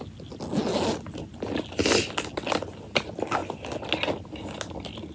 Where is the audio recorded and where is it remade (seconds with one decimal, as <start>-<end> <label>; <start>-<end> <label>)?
0.0-5.1 recorded